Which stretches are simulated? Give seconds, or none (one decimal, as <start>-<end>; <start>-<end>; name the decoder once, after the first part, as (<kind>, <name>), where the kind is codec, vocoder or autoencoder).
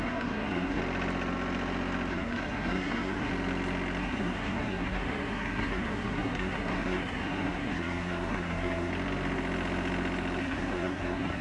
0.0-0.8 (codec, SNAC); 2.1-3.3; 4.0-8.9; 10.4-11.4